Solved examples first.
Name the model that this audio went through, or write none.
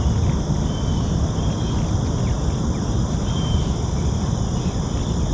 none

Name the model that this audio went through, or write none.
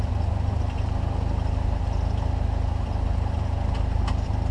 none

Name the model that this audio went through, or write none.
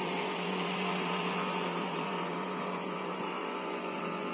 vocoder, Vocos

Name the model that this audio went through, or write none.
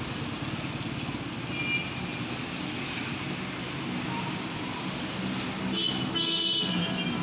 none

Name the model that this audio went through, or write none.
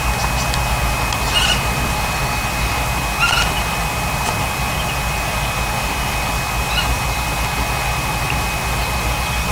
none